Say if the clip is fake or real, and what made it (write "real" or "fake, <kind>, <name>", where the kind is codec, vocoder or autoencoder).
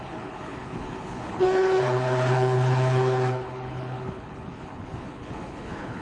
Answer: fake, codec, HILCodec